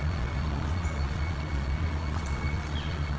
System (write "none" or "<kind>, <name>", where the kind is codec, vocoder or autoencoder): vocoder, Vocos